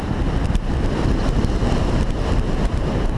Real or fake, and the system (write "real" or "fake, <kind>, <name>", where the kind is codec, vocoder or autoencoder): real